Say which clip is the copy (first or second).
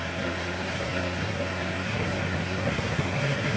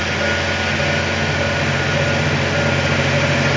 first